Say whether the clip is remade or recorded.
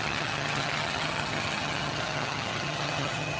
remade